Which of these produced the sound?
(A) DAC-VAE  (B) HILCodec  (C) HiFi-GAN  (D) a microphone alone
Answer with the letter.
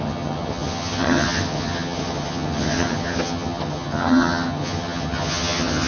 C